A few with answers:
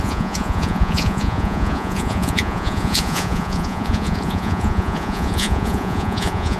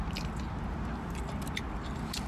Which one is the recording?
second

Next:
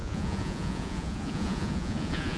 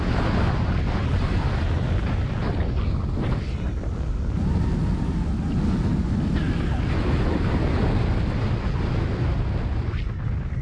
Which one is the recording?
second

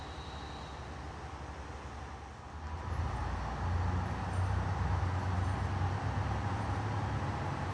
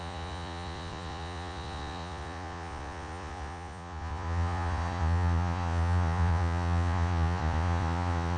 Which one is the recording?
first